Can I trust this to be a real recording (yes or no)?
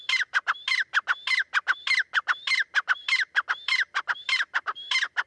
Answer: no